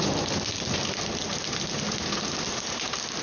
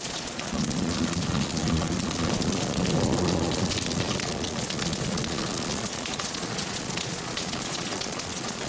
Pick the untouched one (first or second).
first